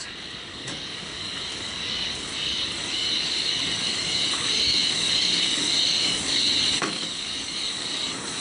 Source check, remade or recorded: remade